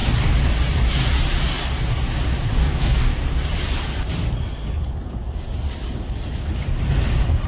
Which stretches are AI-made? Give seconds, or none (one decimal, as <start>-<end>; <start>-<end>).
2.6-3.2